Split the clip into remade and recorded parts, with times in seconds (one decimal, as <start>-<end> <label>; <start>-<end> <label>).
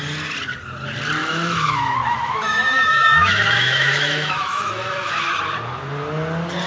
0.0-1.2 recorded; 1.2-5.1 remade; 5.1-6.7 recorded